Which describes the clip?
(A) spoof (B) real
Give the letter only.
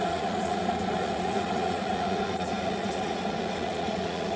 A